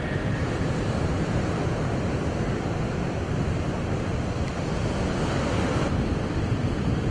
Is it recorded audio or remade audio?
recorded